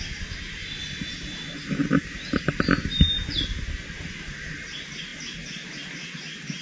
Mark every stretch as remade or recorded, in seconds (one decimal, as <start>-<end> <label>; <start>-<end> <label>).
0.0-6.6 recorded